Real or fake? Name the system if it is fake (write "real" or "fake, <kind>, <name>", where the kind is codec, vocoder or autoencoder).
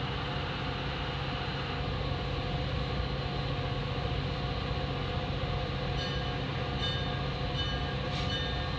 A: real